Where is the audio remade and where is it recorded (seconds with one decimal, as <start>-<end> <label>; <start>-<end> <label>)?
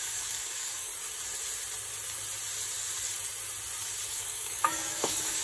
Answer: 0.0-0.9 remade; 0.9-4.1 recorded; 4.1-5.4 remade